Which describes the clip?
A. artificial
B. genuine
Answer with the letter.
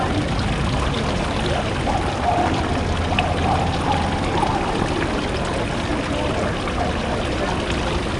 B